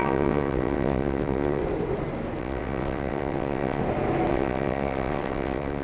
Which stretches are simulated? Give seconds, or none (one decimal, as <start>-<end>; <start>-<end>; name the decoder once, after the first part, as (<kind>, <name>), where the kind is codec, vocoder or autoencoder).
0.0-1.6 (vocoder, WaveNeXt); 2.4-3.8; 4.3-5.8